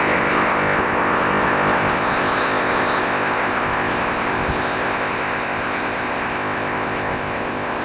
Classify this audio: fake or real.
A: fake